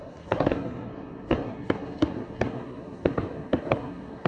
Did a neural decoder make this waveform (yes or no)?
yes